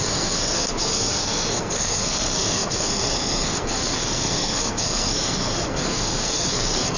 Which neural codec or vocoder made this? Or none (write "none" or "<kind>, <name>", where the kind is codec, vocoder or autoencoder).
codec, SNAC